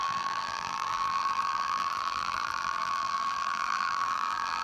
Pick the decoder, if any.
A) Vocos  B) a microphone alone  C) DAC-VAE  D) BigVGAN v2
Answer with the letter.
D